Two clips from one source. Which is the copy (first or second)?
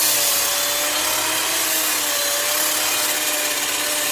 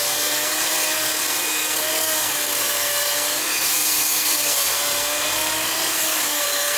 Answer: second